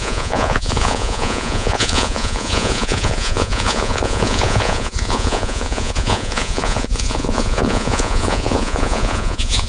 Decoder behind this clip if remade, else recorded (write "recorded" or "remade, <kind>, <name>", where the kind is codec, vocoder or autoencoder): remade, vocoder, Vocos